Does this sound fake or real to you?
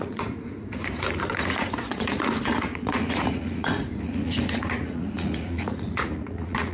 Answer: fake